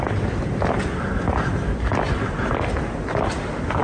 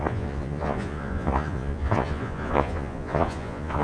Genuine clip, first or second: first